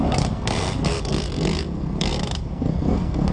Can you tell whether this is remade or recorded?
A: remade